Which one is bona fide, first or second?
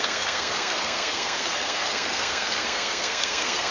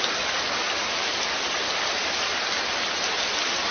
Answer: second